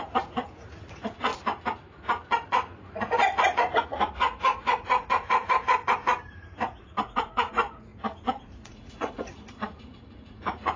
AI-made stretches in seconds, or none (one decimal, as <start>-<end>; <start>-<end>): 0.0-1.3; 2.5-5.7; 6.3-10.8